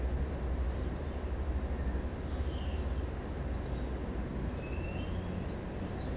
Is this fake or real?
real